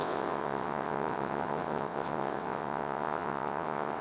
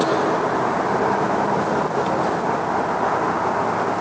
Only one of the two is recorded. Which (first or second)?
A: second